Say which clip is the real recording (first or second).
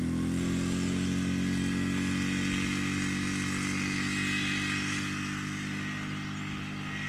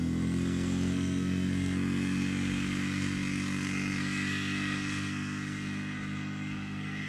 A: first